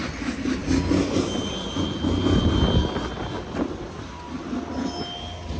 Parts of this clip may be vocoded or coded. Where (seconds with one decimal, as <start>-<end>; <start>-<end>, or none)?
none